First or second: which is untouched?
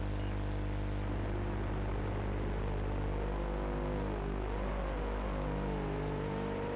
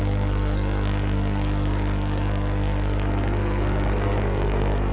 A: first